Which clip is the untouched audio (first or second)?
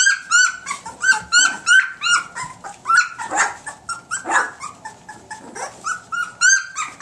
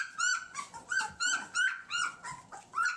first